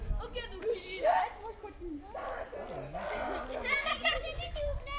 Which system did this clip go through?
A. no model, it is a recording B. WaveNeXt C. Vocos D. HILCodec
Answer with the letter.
A